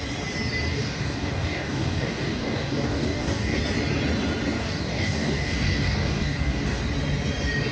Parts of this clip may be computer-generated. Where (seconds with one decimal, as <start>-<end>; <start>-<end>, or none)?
0.7-3.6; 4.6-6.8